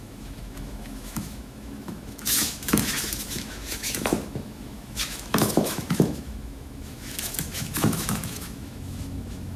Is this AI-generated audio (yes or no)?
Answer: yes